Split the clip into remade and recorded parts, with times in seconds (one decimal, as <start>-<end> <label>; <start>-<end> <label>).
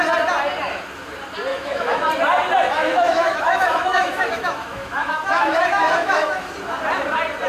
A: 0.0-1.5 recorded; 1.5-2.1 remade; 2.1-2.8 recorded; 2.8-6.4 remade; 6.4-7.5 recorded